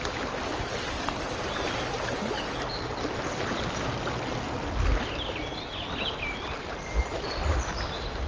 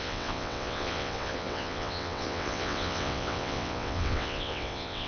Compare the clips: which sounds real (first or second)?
first